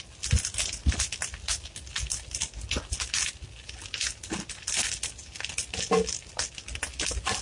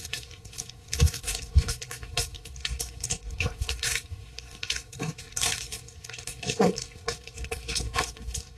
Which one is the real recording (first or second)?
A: first